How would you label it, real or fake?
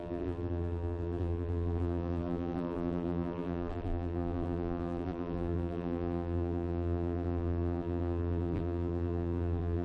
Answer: fake